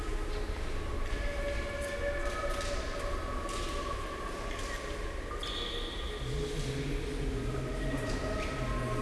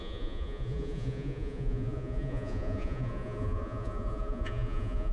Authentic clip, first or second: first